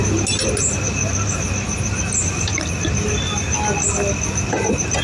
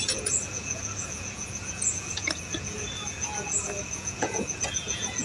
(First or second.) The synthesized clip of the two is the second